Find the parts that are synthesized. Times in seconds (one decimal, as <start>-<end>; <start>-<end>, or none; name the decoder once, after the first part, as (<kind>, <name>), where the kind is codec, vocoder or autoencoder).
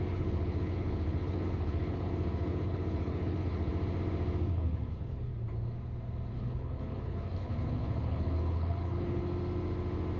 0.0-3.7 (codec, HILCodec); 4.5-5.3; 6.3-9.2